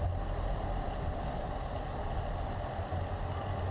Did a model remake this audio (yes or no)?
no